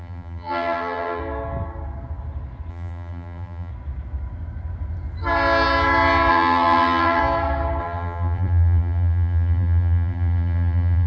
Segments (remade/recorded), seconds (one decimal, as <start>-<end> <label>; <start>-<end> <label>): 0.0-1.2 remade; 1.2-2.7 recorded; 2.7-3.7 remade; 3.7-6.3 recorded; 6.3-7.2 remade; 7.2-7.8 recorded; 7.8-11.1 remade